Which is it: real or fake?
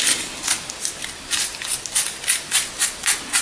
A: real